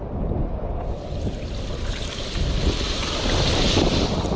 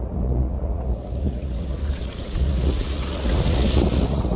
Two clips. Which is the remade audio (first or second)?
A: second